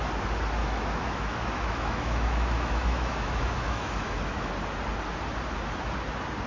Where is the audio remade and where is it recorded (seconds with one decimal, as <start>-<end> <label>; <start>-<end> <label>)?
0.0-0.6 recorded; 0.6-4.5 remade; 4.5-6.5 recorded